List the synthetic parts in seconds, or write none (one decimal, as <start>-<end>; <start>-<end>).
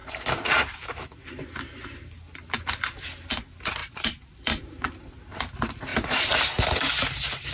3.8-5.1; 5.9-6.9